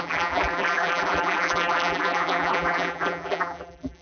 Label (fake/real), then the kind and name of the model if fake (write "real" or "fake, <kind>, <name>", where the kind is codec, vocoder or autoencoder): fake, vocoder, BigVGAN v2